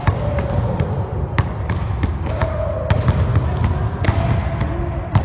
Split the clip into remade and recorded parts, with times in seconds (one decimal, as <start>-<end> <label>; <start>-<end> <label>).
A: 0.0-5.2 recorded

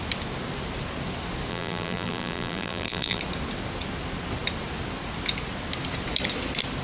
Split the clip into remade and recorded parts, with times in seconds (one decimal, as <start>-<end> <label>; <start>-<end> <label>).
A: 0.0-1.5 recorded; 1.5-3.2 remade; 3.2-6.8 recorded

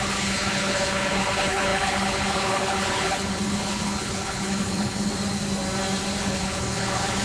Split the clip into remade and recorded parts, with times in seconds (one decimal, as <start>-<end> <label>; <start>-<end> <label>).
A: 0.0-5.1 remade; 5.1-6.2 recorded; 6.2-7.2 remade

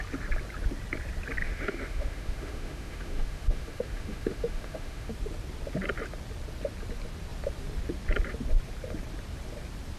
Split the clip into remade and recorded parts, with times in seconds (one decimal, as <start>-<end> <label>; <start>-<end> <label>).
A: 0.0-1.4 recorded; 1.4-5.1 remade; 5.1-10.0 recorded

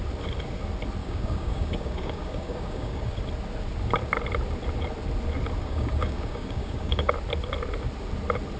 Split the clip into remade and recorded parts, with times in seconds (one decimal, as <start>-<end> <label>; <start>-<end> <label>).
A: 0.0-1.0 recorded; 1.0-3.1 remade; 3.1-5.6 recorded; 5.6-7.1 remade; 7.1-8.6 recorded

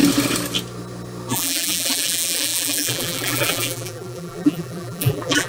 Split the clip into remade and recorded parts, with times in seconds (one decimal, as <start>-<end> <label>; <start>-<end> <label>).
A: 0.0-1.3 recorded; 1.3-5.5 remade

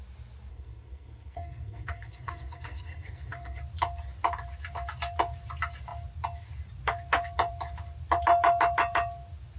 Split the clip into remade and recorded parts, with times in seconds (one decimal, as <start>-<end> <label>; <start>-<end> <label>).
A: 0.0-0.5 recorded; 0.5-3.6 remade; 3.6-9.6 recorded